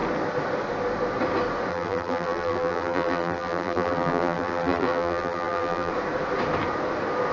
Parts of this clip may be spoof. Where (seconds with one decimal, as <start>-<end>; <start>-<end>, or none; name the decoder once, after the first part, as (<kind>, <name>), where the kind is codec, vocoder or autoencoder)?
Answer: 1.7-5.9 (vocoder, BigVGAN v2)